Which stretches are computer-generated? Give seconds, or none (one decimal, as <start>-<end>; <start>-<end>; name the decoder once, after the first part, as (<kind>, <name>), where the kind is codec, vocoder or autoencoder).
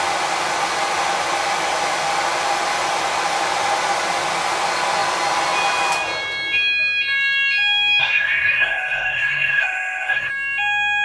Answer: 8.0-10.3 (codec, SNAC)